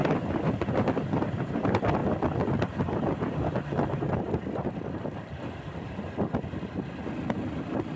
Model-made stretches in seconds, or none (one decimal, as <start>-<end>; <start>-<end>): 0.0-1.6; 2.0-6.0